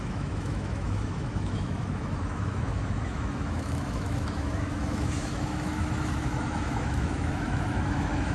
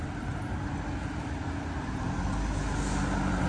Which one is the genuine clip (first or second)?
second